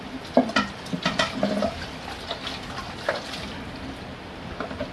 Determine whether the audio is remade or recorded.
remade